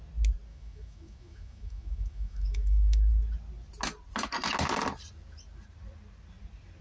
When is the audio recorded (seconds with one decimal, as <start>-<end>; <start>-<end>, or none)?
0.0-0.5; 3.1-6.8